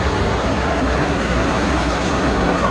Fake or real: fake